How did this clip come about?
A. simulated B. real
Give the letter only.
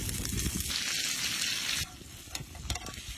B